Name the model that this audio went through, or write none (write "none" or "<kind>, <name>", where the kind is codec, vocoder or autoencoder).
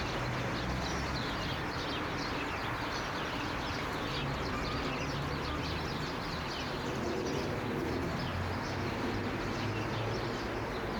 none